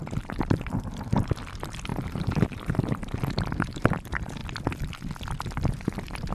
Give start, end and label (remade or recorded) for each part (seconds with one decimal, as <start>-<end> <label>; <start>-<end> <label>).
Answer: 0.0-4.4 remade; 4.4-5.5 recorded; 5.5-6.3 remade